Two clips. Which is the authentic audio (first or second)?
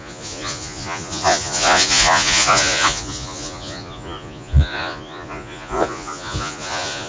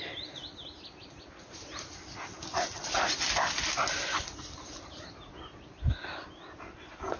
second